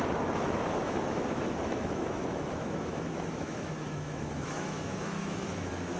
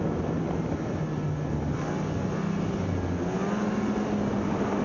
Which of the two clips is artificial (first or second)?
first